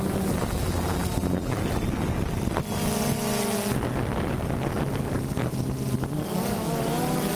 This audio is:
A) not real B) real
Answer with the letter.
B